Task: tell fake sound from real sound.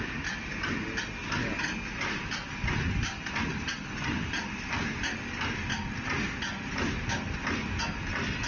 real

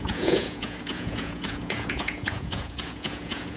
fake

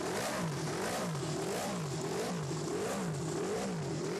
real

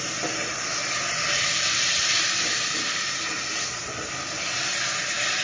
real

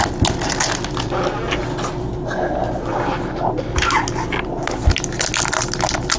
real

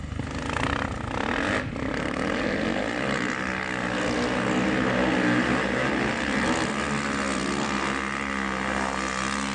real